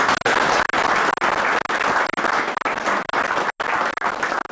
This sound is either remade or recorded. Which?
recorded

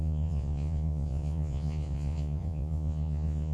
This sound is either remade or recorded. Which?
remade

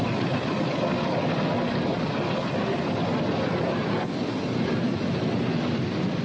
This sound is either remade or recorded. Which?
recorded